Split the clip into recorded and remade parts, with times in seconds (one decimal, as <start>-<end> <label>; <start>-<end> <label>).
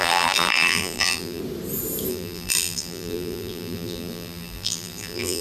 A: 0.0-1.4 remade; 1.4-2.1 recorded; 2.1-5.4 remade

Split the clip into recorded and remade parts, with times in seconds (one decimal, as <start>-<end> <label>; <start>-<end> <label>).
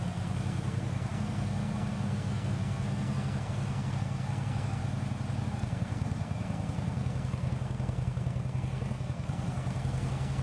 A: 0.0-4.8 remade; 4.8-5.5 recorded; 5.5-10.4 remade